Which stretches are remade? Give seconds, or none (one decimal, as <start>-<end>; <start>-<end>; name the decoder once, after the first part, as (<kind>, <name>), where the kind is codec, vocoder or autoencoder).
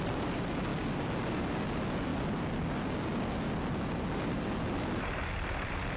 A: none